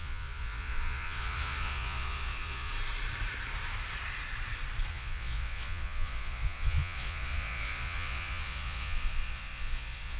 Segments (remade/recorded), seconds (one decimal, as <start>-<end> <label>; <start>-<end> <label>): 0.0-2.7 remade; 2.7-4.9 recorded; 4.9-10.2 remade